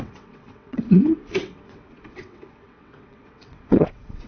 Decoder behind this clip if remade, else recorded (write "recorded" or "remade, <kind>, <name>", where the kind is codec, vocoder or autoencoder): remade, vocoder, WaveNeXt